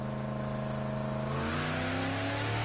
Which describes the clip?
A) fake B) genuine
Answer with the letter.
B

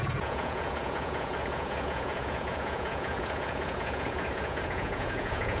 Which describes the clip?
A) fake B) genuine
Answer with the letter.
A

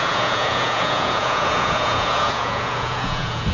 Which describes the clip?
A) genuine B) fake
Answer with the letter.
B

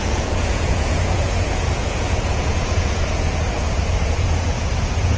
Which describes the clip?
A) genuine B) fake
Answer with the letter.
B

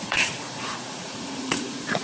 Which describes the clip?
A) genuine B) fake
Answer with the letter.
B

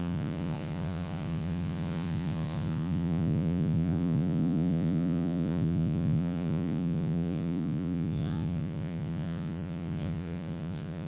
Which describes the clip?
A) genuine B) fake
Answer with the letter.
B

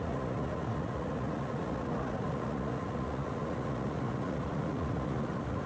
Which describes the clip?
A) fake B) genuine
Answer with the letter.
A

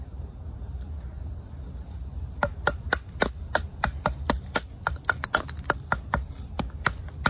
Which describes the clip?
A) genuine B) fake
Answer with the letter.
A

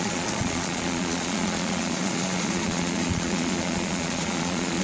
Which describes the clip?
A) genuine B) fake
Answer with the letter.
B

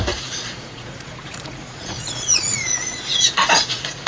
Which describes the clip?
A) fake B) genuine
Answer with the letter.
A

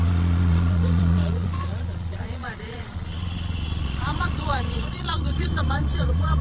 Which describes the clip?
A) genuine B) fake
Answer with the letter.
B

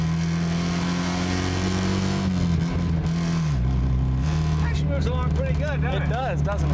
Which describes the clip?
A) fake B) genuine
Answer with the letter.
B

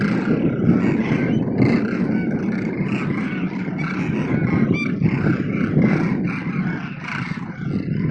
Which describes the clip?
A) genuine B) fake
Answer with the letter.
A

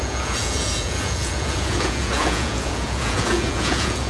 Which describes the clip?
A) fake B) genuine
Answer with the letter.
A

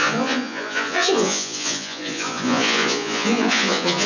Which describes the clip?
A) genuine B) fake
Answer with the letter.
B